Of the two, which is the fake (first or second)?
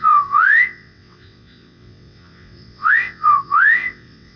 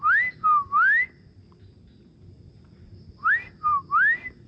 first